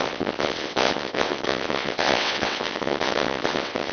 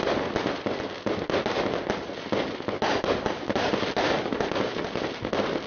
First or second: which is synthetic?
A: first